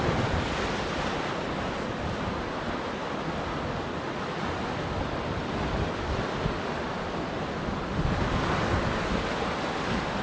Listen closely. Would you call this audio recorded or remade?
recorded